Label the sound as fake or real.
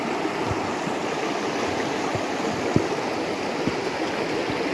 real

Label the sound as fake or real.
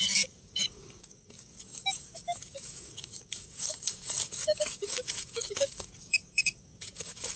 fake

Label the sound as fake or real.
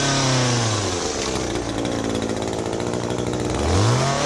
real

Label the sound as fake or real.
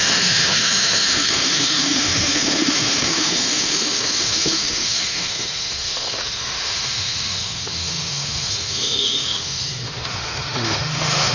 fake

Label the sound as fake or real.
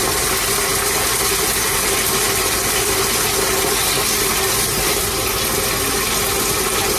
real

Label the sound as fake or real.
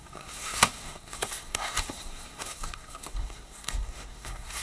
fake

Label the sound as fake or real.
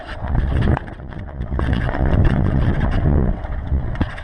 fake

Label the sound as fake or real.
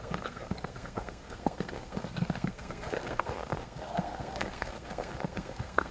fake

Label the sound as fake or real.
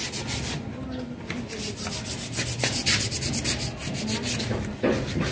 real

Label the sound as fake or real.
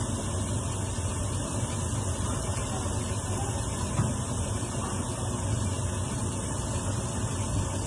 real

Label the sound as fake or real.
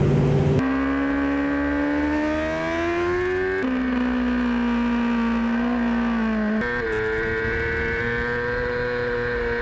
real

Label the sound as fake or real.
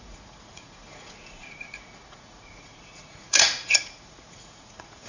fake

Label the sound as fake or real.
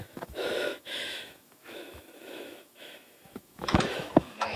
fake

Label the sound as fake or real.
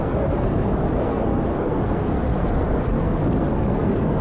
fake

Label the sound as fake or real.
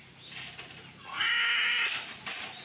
real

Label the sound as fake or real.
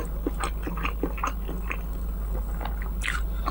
real